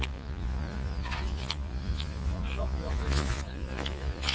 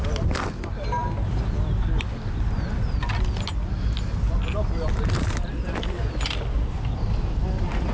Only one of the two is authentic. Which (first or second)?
second